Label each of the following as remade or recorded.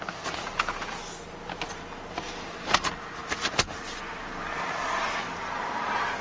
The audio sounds recorded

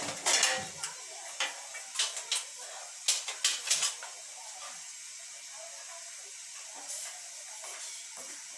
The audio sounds recorded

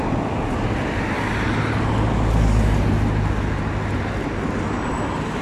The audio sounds recorded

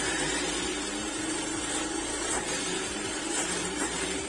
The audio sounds remade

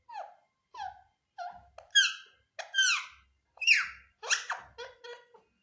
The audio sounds recorded